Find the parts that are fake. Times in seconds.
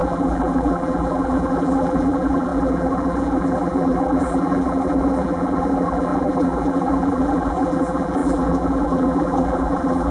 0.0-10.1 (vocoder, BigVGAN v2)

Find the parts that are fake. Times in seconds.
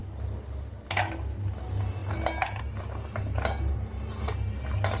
none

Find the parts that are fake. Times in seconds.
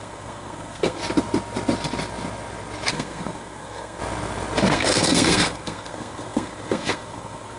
0.0-1.0 (codec, SNAC); 2.9-4.0; 4.7-7.6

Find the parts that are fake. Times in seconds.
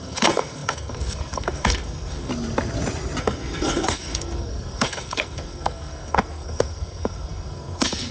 0.0-2.3 (codec, SNAC); 3.2-8.1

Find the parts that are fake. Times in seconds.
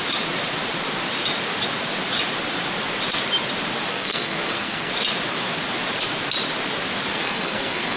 3.9-4.9 (codec, SNAC); 7.1-8.0